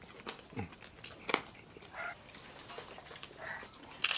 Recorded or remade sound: recorded